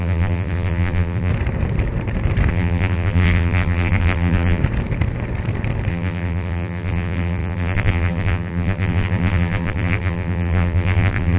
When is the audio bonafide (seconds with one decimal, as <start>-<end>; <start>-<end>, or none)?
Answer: 1.3-2.5; 4.6-5.9